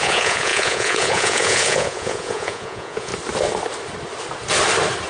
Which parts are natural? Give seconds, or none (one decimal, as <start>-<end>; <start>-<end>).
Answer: 3.1-5.1